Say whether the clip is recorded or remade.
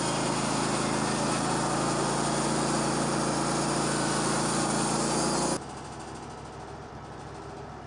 recorded